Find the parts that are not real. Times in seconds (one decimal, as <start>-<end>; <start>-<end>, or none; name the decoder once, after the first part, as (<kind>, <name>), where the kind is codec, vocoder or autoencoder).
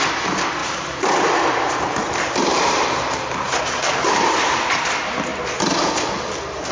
0.6-4.6 (vocoder, BigVGAN v2)